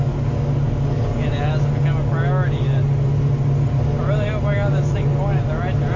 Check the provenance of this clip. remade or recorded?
recorded